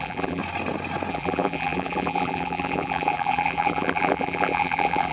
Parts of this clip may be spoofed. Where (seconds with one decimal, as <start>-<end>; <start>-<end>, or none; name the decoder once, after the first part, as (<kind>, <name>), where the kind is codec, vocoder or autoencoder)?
0.0-0.4 (vocoder, BigVGAN v2); 1.1-5.1